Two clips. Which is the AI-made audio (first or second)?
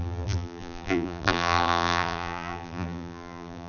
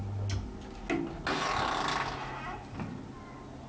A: first